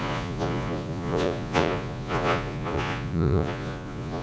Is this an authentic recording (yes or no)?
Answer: no